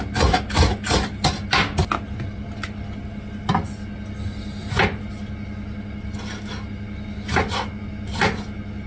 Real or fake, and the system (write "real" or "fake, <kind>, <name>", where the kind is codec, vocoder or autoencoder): real